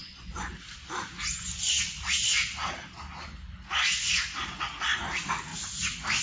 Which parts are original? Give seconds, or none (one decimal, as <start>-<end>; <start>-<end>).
0.5-6.2